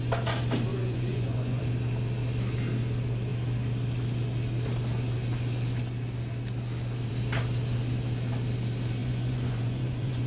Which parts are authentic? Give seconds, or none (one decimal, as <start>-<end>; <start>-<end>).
0.0-0.7; 1.6-9.0